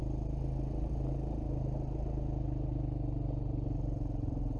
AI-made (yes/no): no